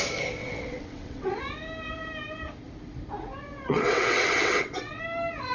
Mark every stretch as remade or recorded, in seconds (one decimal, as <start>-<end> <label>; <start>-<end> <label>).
0.0-0.4 recorded; 0.4-1.4 remade; 1.4-3.5 recorded; 3.5-5.0 remade; 5.0-5.5 recorded